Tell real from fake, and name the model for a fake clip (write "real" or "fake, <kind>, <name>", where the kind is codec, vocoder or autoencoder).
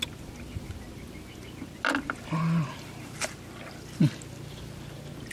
real